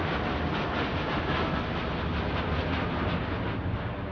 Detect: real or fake real